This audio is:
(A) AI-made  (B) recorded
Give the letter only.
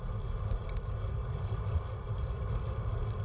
B